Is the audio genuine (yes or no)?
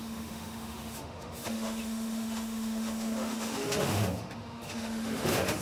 no